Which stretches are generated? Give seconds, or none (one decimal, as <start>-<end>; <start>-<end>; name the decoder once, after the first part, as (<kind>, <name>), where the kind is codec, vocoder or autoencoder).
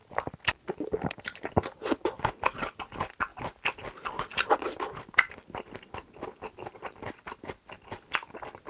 none